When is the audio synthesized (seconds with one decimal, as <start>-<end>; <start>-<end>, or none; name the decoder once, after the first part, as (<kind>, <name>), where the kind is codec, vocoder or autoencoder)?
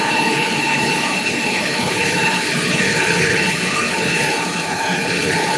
0.0-5.6 (codec, HILCodec)